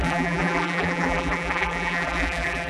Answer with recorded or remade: remade